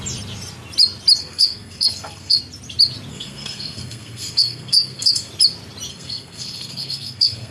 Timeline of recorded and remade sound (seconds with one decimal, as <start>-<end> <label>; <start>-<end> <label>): 0.0-1.2 recorded; 1.2-2.4 remade; 2.4-3.1 recorded; 3.1-5.3 remade; 5.3-5.9 recorded; 5.9-7.5 remade